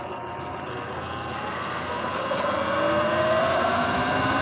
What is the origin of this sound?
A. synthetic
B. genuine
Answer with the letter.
B